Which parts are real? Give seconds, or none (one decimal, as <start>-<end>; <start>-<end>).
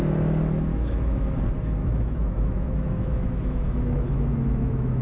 0.0-0.7; 1.4-1.8